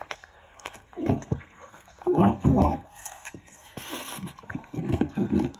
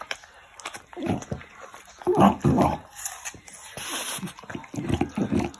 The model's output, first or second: first